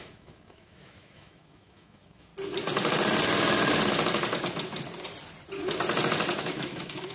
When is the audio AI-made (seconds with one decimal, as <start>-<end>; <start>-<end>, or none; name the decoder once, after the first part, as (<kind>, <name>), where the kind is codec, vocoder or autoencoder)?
0.0-2.3 (autoencoder, DAC-VAE); 6.4-7.1